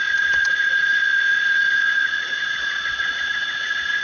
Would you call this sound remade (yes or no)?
yes